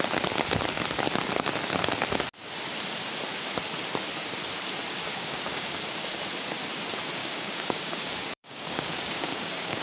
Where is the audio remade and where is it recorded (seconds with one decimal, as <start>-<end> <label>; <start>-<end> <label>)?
0.0-5.1 recorded; 5.1-6.2 remade; 6.2-7.2 recorded; 7.2-9.8 remade